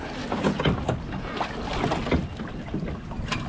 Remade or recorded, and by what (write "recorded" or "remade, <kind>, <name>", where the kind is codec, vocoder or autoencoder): recorded